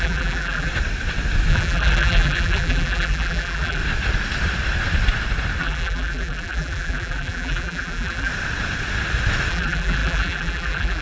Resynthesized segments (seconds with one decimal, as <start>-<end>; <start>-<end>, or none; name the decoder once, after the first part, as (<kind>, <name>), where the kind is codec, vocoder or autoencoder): 0.0-0.7 (vocoder, BigVGAN v2); 1.5-3.8; 5.6-8.3; 9.5-11.0